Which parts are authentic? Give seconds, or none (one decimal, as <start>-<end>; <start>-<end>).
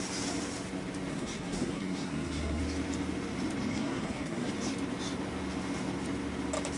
0.0-1.1; 2.6-3.7; 4.5-6.8